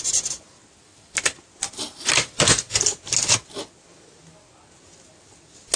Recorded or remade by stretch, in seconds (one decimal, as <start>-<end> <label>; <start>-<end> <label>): 0.0-5.8 recorded